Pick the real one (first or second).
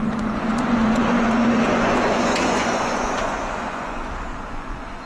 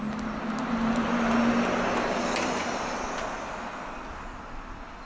second